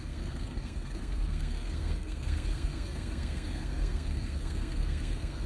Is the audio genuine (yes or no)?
no